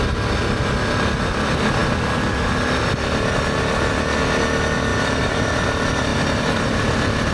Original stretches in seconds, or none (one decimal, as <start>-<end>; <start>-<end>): 0.0-4.9; 5.6-7.3